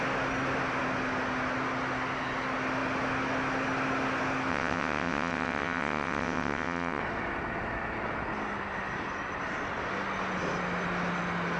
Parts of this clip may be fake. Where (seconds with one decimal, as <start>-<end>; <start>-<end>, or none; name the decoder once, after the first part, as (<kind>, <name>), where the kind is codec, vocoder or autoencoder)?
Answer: 4.5-7.0 (vocoder, WaveNeXt)